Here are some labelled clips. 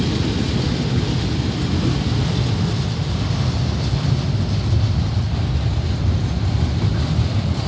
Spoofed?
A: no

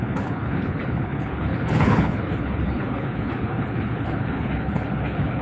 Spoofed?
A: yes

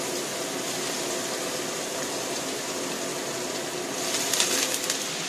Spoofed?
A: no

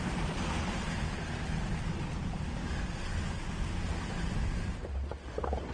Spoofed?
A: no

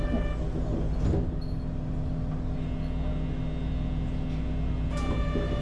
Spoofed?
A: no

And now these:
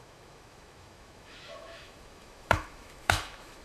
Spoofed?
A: yes